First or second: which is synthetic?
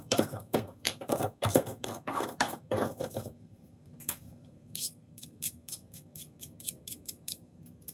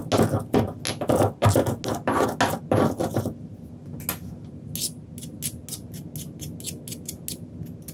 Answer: first